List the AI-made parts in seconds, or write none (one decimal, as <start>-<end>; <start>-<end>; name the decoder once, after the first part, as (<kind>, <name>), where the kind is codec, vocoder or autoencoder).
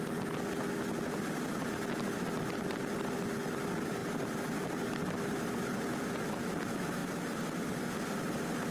4.0-4.5 (vocoder, BigVGAN v2); 7.0-7.8